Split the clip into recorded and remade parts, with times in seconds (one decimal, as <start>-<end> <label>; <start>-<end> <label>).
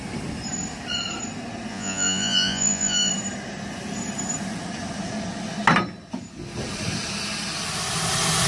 0.0-1.7 recorded; 1.7-3.1 remade; 3.1-8.5 recorded